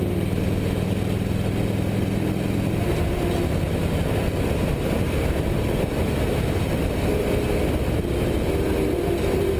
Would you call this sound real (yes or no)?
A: yes